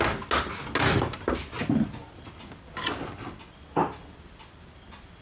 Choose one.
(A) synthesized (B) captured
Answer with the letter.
B